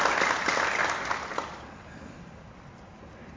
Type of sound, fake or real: real